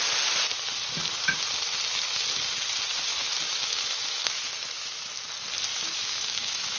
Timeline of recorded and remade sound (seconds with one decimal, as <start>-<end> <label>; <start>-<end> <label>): 0.0-3.1 recorded; 3.1-5.1 remade; 5.1-5.7 recorded; 5.7-6.8 remade